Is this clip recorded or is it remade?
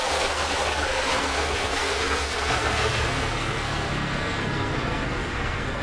remade